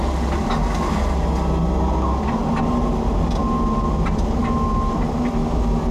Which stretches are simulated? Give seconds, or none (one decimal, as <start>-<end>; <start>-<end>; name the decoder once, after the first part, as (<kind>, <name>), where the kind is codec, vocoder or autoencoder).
none